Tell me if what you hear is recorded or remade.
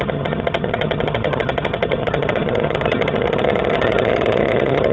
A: remade